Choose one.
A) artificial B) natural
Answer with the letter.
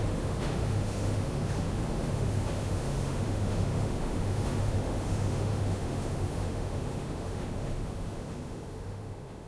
A